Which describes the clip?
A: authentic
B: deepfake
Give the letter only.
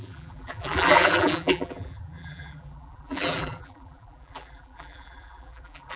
B